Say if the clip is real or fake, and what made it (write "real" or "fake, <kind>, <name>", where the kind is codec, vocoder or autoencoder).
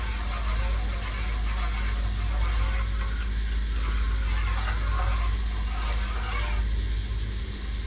real